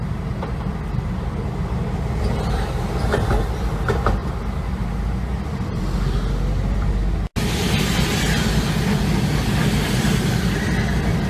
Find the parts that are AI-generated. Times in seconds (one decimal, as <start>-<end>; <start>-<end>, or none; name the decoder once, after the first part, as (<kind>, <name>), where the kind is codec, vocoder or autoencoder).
none